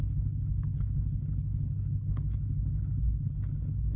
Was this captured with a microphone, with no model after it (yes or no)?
no